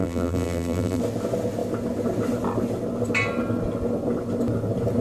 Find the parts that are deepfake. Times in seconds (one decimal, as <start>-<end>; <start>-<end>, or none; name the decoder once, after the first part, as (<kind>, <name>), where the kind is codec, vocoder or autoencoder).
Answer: 0.0-1.0 (vocoder, BigVGAN v2)